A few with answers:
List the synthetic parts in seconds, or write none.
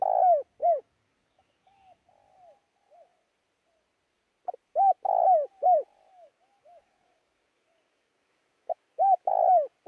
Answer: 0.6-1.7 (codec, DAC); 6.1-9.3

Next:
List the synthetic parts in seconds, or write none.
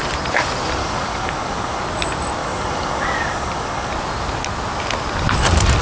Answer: 0.8-1.8 (codec, DAC); 2.4-3.9